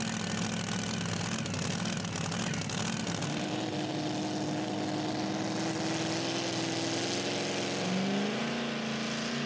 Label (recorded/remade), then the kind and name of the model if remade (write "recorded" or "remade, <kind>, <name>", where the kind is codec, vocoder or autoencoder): recorded